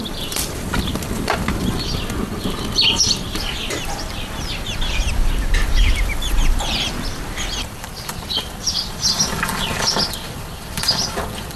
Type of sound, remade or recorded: remade